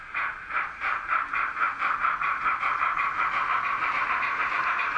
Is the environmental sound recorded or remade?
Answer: remade